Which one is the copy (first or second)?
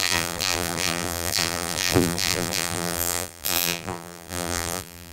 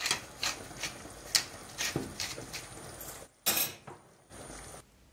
first